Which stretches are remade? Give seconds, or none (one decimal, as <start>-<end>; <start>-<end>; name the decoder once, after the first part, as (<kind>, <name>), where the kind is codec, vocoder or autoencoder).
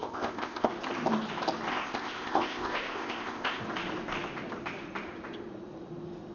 0.0-0.7 (codec, ZipCodec); 1.7-3.6